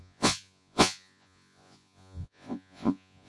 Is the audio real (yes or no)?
no